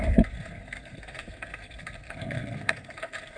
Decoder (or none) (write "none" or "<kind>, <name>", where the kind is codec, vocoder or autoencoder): codec, SNAC